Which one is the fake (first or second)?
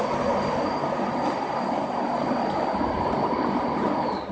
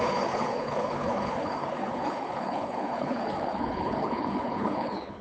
second